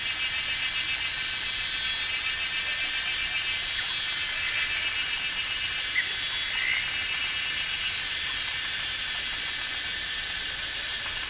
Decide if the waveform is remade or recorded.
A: recorded